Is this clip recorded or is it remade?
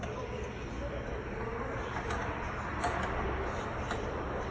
remade